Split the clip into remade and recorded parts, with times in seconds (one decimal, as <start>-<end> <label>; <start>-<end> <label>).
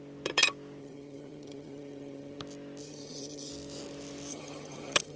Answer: 0.0-0.8 recorded; 0.8-2.4 remade; 2.4-2.8 recorded; 2.8-3.5 remade; 3.5-4.3 recorded; 4.3-5.2 remade